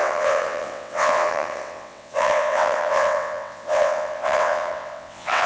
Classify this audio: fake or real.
fake